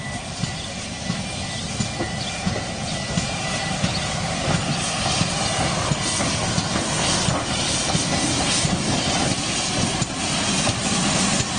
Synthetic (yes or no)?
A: no